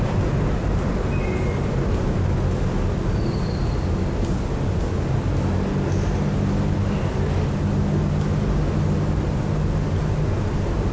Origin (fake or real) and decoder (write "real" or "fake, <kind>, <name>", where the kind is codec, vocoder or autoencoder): real